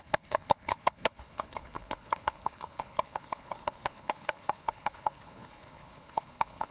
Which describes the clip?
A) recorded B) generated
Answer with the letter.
B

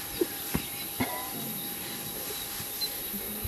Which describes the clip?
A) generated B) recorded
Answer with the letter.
B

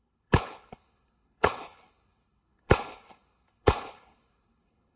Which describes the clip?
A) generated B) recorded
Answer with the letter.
A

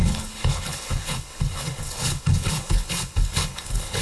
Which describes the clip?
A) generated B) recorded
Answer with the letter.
A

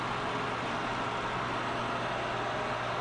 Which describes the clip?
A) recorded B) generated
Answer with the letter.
A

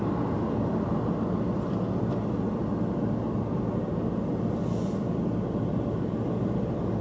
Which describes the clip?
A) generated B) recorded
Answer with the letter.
B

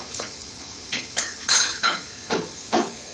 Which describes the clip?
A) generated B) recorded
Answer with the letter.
A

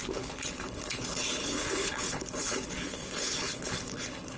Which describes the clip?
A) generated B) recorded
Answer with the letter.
A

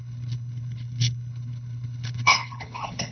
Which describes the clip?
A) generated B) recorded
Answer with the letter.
A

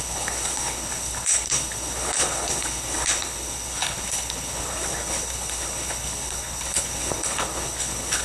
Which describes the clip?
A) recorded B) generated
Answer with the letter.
B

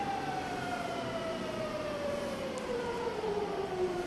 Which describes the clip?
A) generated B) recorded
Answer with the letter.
B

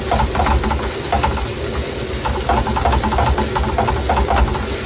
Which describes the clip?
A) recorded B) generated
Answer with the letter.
A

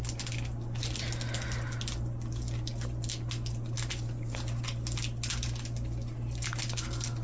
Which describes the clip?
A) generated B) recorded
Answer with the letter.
B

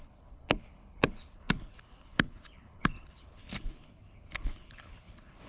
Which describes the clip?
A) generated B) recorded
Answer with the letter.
A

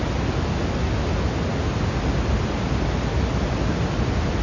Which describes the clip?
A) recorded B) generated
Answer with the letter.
A